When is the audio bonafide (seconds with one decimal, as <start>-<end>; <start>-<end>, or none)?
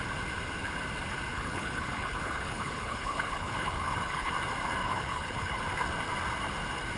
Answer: 0.0-1.3; 4.3-4.8; 5.6-7.0